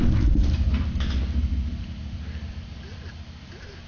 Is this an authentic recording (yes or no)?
no